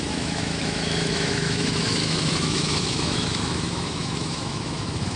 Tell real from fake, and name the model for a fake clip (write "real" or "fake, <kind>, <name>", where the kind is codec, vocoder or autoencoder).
fake, autoencoder, DAC-VAE